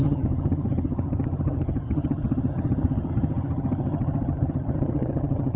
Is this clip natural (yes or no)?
no